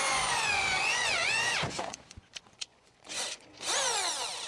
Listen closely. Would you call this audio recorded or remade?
remade